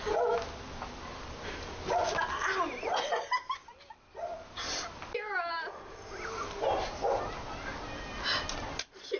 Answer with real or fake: real